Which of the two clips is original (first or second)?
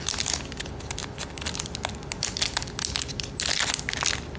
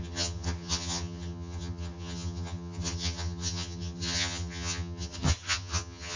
first